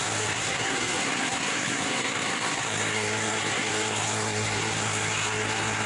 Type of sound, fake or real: fake